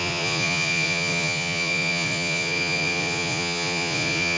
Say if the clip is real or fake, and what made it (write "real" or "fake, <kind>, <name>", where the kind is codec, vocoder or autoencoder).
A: fake, vocoder, Vocos